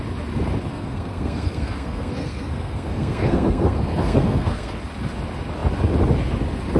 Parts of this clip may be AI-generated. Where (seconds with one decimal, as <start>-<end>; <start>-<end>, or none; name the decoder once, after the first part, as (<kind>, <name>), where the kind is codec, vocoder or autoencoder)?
0.7-4.8 (codec, SNAC)